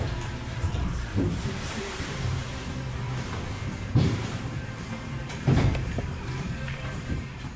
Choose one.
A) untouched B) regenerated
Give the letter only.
B